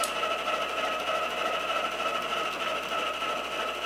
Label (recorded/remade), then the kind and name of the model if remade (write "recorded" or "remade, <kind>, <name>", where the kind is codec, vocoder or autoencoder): recorded